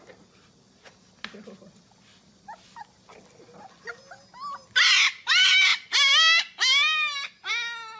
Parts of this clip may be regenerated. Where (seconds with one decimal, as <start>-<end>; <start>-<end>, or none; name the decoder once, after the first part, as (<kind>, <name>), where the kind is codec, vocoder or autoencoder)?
none